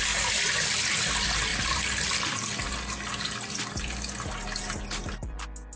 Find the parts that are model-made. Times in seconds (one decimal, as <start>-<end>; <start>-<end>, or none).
none